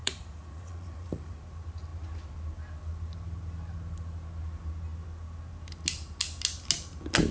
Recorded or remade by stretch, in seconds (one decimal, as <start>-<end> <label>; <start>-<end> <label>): 0.0-1.4 remade; 1.4-7.3 recorded